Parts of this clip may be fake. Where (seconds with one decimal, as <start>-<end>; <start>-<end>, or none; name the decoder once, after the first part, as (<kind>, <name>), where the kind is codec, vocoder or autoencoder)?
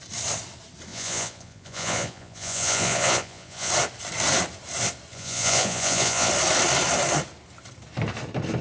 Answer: 0.9-3.7 (vocoder, Vocos); 5.1-6.3